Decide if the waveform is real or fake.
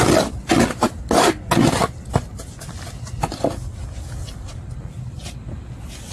real